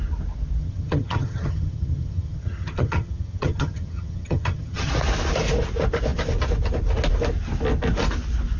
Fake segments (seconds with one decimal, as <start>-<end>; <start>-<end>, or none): 0.6-4.9